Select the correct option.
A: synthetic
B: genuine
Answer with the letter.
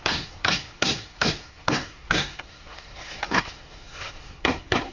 A